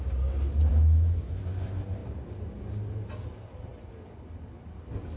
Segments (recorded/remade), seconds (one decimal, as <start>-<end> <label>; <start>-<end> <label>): 0.0-0.7 recorded; 0.7-1.4 remade; 1.4-5.2 recorded